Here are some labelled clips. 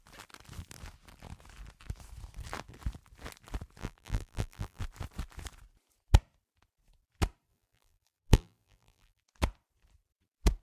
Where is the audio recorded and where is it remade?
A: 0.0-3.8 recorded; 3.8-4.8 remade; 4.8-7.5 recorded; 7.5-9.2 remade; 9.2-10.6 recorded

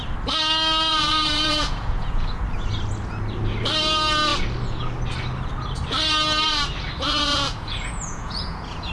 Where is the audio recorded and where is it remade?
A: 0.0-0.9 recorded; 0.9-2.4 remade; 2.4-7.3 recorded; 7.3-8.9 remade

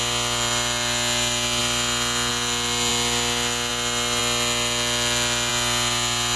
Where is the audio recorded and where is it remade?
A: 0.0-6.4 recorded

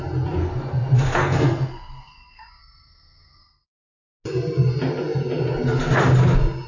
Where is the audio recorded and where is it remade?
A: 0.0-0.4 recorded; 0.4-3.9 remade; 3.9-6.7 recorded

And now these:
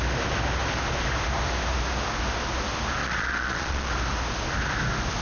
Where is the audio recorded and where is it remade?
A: 0.0-3.0 recorded; 3.0-3.9 remade; 3.9-5.2 recorded

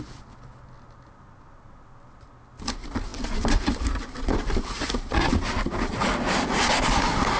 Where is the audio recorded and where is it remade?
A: 0.0-7.4 recorded

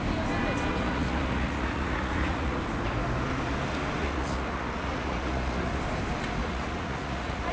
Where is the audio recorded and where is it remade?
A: 0.0-0.7 recorded; 0.7-2.6 remade; 2.6-4.0 recorded; 4.0-5.8 remade; 5.8-6.4 recorded; 6.4-7.5 remade

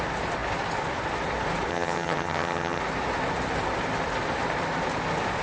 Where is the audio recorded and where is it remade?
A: 0.0-1.7 recorded; 1.7-2.8 remade; 2.8-5.4 recorded